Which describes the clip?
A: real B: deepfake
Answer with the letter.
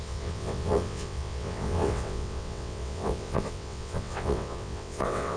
B